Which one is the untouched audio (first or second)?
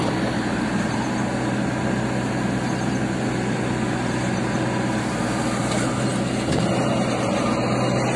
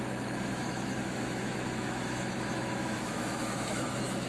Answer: first